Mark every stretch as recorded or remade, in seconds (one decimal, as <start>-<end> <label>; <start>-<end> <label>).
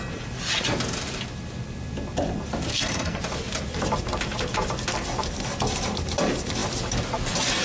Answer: 0.0-2.7 recorded; 2.7-3.2 remade; 3.2-7.6 recorded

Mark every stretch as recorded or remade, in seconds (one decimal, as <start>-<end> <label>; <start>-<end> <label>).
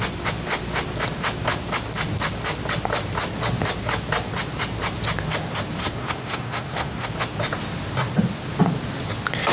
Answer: 0.0-5.8 recorded; 5.8-7.1 remade; 7.1-9.5 recorded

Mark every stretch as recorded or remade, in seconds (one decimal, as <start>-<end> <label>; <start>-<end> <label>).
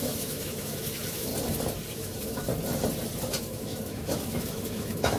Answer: 0.0-1.3 remade; 1.3-1.9 recorded; 1.9-2.5 remade; 2.5-3.4 recorded; 3.4-5.2 remade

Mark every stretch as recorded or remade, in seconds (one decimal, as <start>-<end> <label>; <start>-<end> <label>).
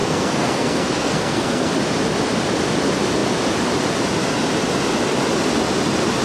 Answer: 0.0-1.7 remade; 1.7-6.2 recorded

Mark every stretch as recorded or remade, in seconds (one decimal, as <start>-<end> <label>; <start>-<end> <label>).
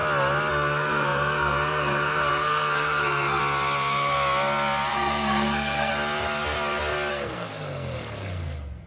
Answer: 0.0-0.5 recorded; 0.5-3.4 remade; 3.4-4.9 recorded; 4.9-5.9 remade; 5.9-7.1 recorded; 7.1-8.9 remade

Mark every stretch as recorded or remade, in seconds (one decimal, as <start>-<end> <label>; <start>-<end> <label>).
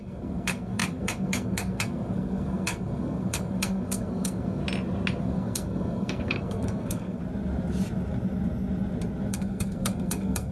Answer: 0.0-4.6 remade; 4.6-5.2 recorded; 5.2-7.2 remade; 7.2-9.3 recorded; 9.3-10.5 remade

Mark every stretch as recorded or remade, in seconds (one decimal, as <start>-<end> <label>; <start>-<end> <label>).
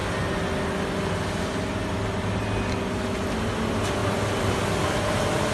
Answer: 0.0-5.5 recorded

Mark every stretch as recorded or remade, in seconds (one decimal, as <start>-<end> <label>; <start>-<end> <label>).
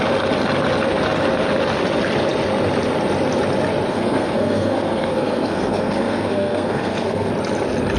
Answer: 0.0-3.9 recorded; 3.9-7.3 remade; 7.3-8.0 recorded